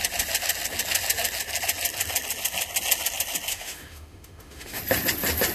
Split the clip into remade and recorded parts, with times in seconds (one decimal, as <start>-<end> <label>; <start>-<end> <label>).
0.0-3.5 recorded; 3.5-4.8 remade; 4.8-5.5 recorded